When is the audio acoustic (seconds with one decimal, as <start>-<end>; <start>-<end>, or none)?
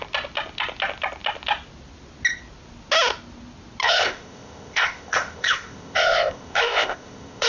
0.0-3.8